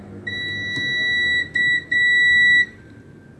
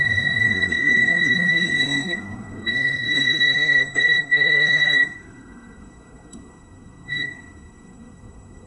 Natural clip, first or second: first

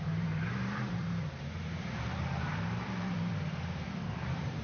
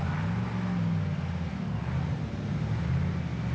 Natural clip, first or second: second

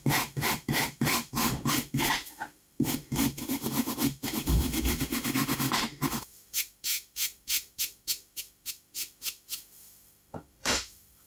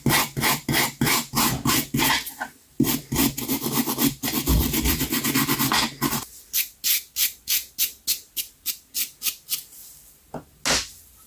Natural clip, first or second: second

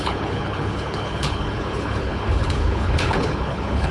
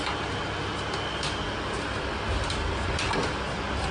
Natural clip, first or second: second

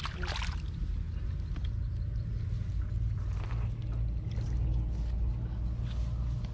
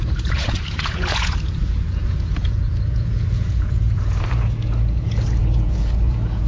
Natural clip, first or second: first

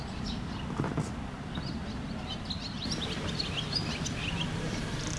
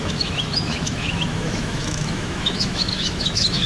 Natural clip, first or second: first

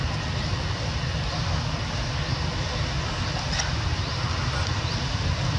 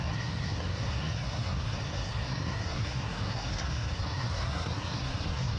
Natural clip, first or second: first